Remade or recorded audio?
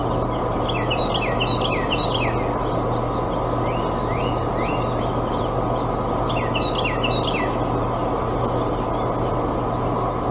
recorded